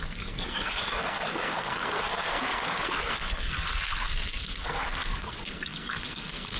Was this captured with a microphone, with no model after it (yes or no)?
no